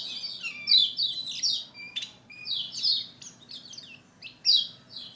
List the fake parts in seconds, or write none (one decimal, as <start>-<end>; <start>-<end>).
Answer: none

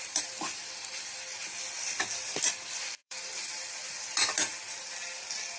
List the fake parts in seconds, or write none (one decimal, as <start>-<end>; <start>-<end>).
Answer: 0.0-5.6

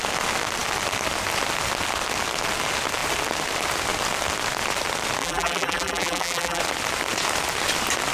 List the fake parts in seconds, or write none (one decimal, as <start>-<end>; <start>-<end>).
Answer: 5.2-6.6

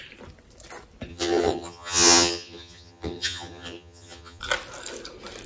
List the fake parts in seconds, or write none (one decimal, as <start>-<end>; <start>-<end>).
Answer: 1.1-4.4

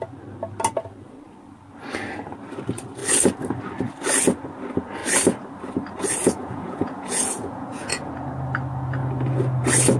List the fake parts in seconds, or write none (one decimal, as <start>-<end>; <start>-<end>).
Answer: 6.2-8.1

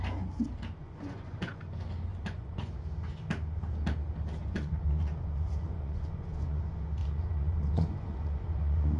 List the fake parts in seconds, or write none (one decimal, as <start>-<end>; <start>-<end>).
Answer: 0.8-1.6; 2.1-2.7; 4.4-6.6; 7.0-9.0

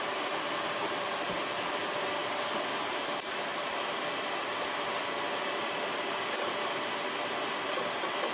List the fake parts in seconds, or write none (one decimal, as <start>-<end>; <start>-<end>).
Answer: none